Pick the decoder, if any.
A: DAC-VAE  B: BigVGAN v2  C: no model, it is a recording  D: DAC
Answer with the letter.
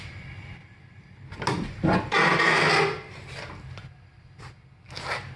C